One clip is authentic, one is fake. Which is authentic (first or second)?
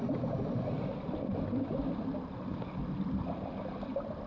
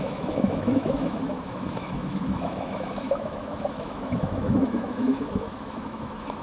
first